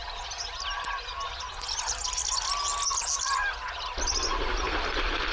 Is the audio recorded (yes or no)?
yes